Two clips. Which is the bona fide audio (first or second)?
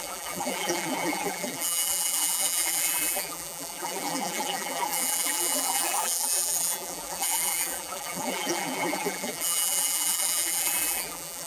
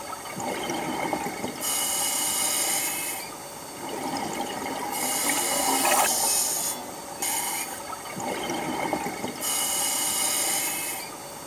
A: second